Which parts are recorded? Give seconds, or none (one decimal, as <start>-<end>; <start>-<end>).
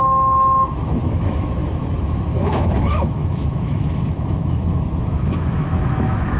none